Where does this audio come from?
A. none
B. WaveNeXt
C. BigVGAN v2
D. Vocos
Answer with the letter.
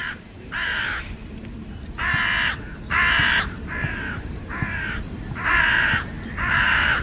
C